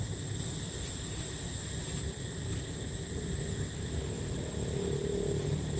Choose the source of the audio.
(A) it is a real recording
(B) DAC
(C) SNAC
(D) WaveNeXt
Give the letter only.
A